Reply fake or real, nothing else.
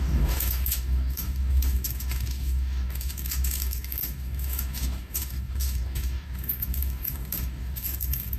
fake